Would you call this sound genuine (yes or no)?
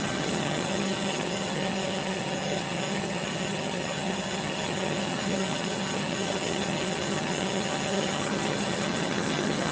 no